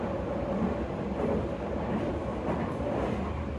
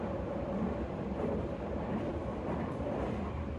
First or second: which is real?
first